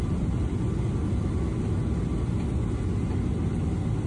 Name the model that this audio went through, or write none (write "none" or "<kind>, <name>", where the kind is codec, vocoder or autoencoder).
none